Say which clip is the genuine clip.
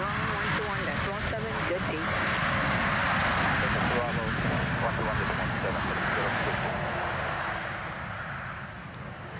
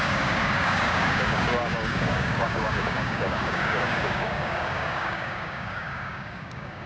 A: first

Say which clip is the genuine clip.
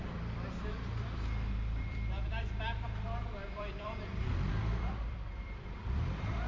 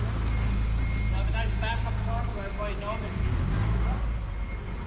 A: second